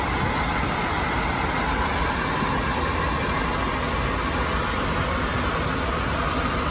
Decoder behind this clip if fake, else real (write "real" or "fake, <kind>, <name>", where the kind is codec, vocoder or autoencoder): real